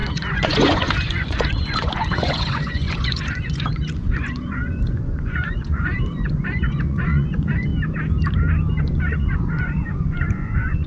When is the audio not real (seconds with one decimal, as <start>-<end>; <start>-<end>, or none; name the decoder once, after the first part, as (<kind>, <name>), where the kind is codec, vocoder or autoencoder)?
0.0-7.7 (vocoder, Vocos); 8.8-10.9